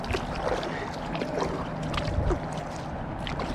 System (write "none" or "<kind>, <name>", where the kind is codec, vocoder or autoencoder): none